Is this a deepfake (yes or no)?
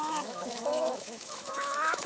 yes